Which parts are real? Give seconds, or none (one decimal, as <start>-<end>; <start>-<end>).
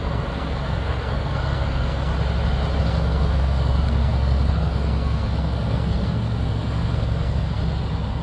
2.1-2.8; 7.6-8.2